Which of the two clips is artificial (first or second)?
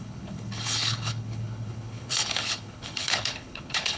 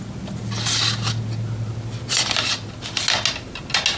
first